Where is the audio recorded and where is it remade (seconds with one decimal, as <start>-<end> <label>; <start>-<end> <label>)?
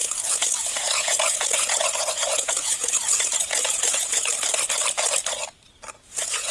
0.0-4.3 remade; 4.3-6.0 recorded; 6.0-6.5 remade